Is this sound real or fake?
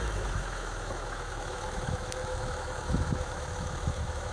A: fake